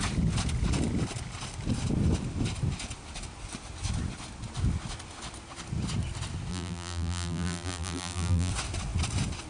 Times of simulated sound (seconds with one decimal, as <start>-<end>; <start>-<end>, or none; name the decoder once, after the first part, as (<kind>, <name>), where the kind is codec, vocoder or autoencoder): 6.5-8.5 (vocoder, BigVGAN v2)